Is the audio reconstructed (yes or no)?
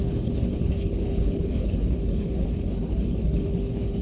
yes